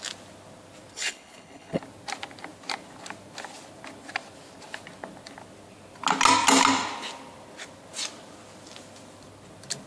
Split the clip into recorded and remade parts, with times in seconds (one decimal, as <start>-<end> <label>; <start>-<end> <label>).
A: 0.0-0.9 recorded; 0.9-1.8 remade; 1.8-9.9 recorded